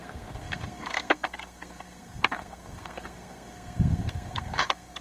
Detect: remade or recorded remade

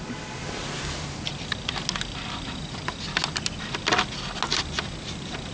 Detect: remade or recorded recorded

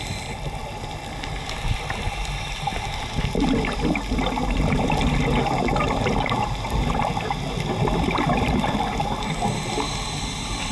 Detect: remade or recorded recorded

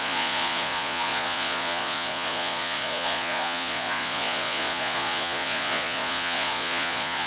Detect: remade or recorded remade